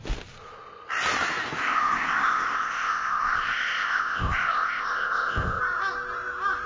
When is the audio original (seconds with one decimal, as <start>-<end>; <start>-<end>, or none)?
0.0-1.6; 5.6-6.7